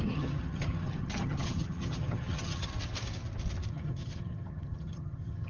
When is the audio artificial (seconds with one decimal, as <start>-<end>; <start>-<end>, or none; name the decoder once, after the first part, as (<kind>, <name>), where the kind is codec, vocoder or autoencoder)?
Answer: 0.0-2.7 (vocoder, HiFi-GAN); 3.7-5.5